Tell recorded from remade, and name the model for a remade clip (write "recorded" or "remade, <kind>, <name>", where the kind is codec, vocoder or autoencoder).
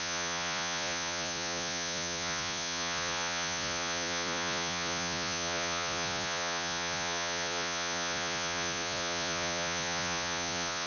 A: remade, vocoder, Vocos